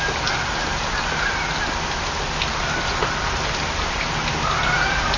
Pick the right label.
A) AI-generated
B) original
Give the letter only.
B